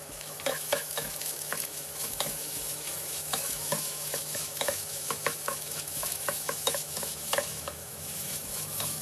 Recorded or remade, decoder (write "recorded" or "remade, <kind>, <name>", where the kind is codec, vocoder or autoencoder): remade, autoencoder, DAC-VAE